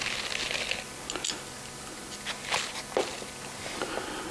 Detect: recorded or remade recorded